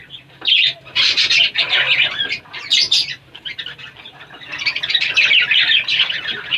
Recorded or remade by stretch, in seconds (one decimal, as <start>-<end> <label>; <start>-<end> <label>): 0.0-0.9 recorded; 0.9-1.4 remade; 1.4-2.7 recorded; 2.7-3.6 remade; 3.6-6.6 recorded